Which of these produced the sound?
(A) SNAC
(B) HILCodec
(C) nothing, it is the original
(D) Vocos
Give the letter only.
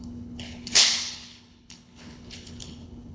B